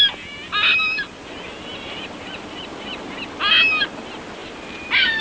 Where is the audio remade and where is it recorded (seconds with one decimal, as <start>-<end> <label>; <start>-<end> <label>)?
0.0-0.7 recorded; 0.7-1.2 remade; 1.2-1.7 recorded; 1.7-3.5 remade; 3.5-4.4 recorded; 4.4-5.2 remade